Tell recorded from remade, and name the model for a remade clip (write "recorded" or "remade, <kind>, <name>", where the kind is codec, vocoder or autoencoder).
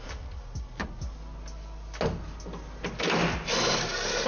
recorded